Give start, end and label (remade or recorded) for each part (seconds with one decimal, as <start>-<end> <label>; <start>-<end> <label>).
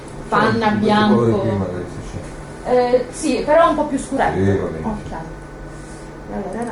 0.0-3.3 remade; 3.3-4.6 recorded; 4.6-5.3 remade; 5.3-6.7 recorded